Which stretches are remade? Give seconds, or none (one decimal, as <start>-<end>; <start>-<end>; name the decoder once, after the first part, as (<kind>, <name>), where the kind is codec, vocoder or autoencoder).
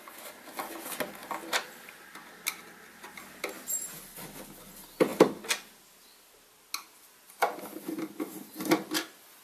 none